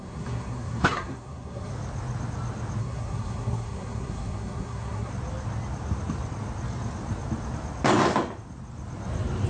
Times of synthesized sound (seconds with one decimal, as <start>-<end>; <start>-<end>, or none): 0.0-1.7; 2.8-5.1